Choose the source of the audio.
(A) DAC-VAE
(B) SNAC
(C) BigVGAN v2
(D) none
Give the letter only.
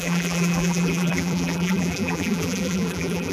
C